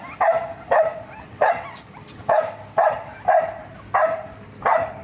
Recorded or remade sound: recorded